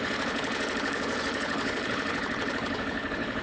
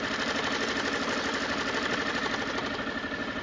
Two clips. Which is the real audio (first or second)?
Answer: second